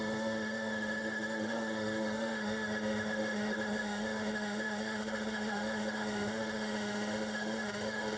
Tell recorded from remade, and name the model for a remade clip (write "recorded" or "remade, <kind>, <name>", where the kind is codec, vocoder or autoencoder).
remade, autoencoder, DAC-VAE